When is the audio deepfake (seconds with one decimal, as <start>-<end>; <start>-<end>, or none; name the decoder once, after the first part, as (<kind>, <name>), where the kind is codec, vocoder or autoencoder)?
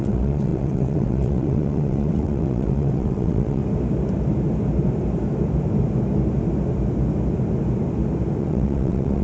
0.0-3.6 (vocoder, WaveNeXt); 8.4-9.2